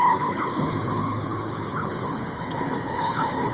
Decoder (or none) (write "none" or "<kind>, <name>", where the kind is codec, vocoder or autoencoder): codec, HILCodec